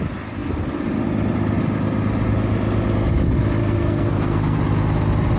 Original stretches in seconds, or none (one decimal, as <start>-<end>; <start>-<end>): 0.0-3.6; 4.6-5.4

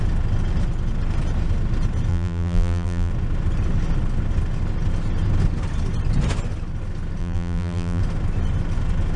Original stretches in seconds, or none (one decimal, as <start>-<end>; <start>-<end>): 0.0-2.1; 3.1-7.2; 8.0-9.2

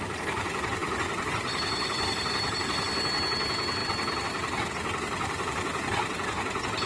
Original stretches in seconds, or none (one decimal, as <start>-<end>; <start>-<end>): 0.0-6.9